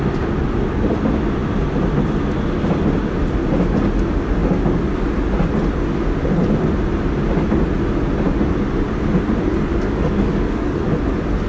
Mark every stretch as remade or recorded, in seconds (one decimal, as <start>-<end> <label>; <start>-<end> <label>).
0.0-9.7 recorded; 9.7-10.9 remade; 10.9-11.5 recorded